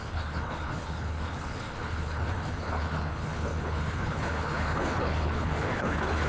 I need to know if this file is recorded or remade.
remade